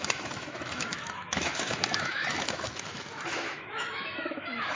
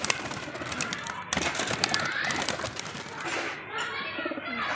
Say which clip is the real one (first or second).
second